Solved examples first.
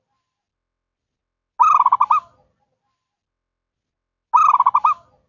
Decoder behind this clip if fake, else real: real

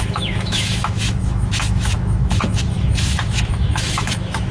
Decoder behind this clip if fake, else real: fake, autoencoder, DAC-VAE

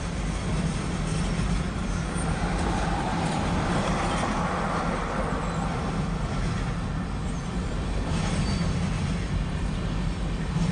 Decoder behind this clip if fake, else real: real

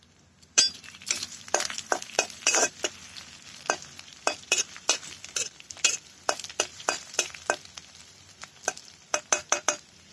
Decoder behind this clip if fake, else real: fake, vocoder, BigVGAN v2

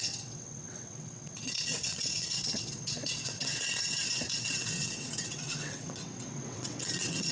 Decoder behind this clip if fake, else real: fake, vocoder, WaveNeXt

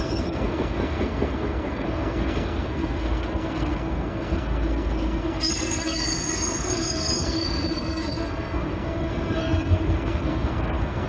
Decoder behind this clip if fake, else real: fake, codec, SNAC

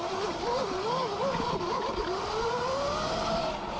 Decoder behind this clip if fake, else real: real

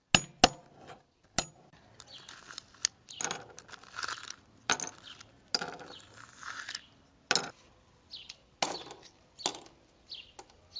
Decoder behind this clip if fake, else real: real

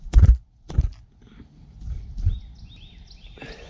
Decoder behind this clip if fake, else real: real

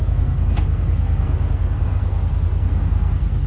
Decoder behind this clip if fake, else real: fake, codec, SNAC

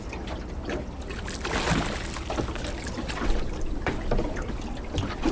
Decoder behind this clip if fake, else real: real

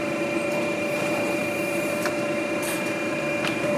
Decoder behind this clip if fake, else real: fake, vocoder, BigVGAN v2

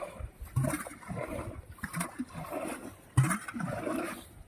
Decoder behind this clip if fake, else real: fake, vocoder, BigVGAN v2